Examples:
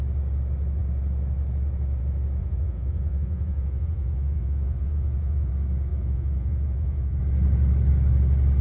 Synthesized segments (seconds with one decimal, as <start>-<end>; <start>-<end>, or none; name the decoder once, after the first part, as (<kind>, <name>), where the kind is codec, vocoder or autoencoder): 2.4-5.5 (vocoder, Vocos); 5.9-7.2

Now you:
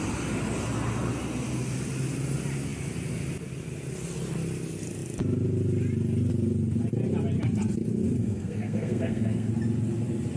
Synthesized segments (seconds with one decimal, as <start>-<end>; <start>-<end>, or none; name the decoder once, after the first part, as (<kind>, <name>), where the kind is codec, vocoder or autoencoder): 8.2-9.5 (codec, SNAC)

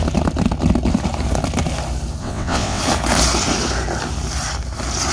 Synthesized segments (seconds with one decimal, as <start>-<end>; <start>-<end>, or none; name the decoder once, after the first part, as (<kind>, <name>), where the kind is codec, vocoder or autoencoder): 2.2-2.8 (vocoder, WaveNeXt)

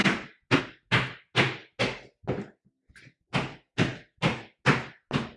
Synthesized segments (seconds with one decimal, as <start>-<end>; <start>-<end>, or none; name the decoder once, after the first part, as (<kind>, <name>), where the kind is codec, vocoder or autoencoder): none